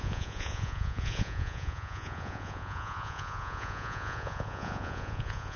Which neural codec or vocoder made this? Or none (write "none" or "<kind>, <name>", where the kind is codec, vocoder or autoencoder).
vocoder, Vocos